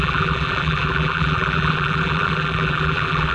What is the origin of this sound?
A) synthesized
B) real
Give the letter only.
A